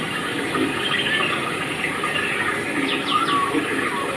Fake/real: real